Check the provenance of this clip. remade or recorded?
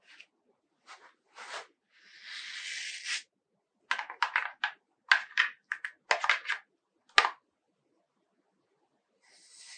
recorded